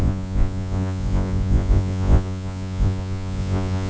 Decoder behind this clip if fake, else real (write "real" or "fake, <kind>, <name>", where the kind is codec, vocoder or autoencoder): fake, vocoder, Vocos